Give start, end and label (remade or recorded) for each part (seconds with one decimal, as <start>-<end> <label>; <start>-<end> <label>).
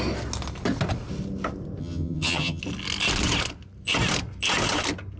0.0-1.8 recorded; 1.8-2.6 remade; 2.6-5.2 recorded